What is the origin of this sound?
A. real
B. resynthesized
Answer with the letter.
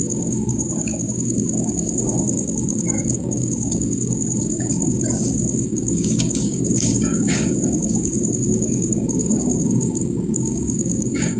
B